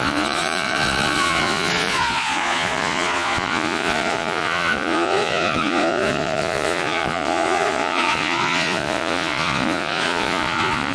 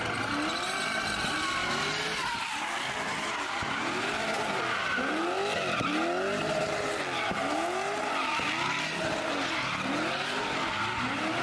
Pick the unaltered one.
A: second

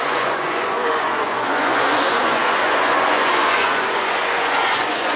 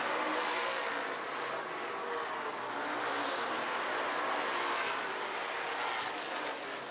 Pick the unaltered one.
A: second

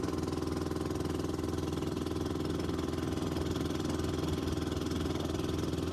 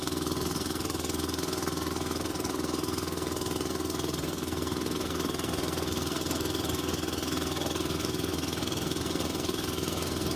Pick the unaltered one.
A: first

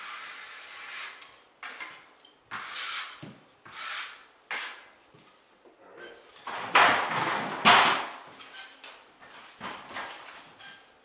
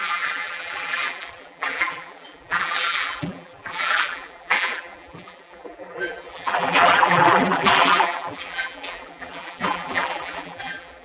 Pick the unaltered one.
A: first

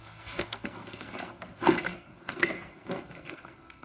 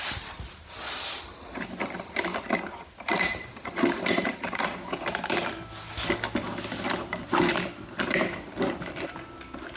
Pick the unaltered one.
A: second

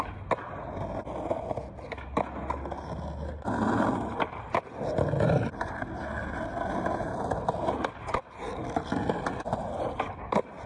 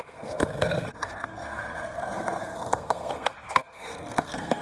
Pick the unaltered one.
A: first